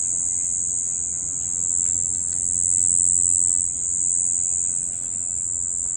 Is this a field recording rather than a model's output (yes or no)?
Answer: yes